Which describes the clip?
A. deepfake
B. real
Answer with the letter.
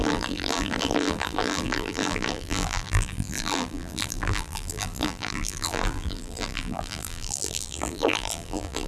A